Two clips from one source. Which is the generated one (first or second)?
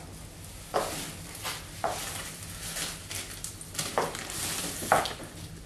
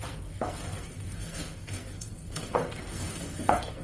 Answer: second